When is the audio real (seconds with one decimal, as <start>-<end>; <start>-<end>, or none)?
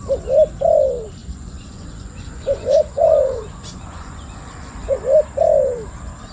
0.0-1.2; 5.0-6.3